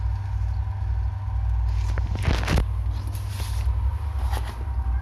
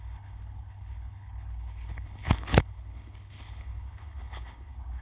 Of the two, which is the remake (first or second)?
second